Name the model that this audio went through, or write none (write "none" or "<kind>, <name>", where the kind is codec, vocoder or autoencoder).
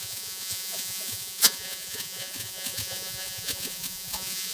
vocoder, Vocos